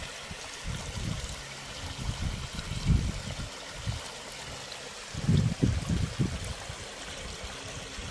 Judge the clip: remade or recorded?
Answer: recorded